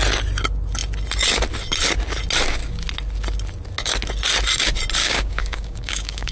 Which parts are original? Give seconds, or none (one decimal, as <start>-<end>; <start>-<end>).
0.0-5.0